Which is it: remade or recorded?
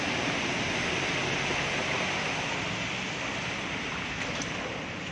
recorded